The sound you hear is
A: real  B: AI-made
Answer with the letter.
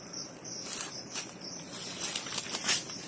A